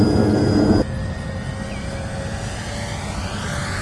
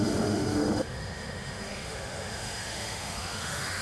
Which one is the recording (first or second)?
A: first